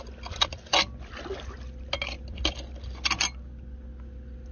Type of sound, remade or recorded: recorded